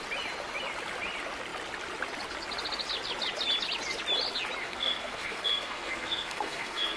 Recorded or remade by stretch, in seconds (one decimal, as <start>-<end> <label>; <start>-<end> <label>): 0.0-4.6 recorded; 4.6-7.0 remade